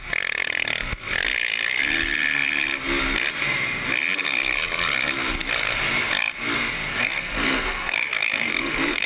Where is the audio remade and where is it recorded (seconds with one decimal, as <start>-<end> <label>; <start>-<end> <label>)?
0.0-6.9 recorded; 6.9-9.1 remade